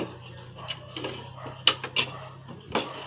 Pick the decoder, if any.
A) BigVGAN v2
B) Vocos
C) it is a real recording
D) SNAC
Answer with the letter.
C